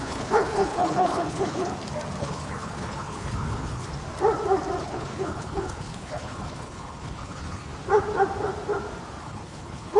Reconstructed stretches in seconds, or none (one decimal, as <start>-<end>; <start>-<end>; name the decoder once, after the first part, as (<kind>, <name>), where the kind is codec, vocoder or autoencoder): 0.0-1.7 (codec, HILCodec); 2.2-3.9; 4.8-7.7; 9.2-10.0